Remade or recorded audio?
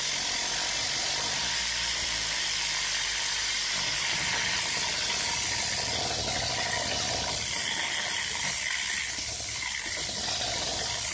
recorded